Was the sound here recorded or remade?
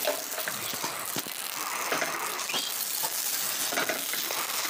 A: recorded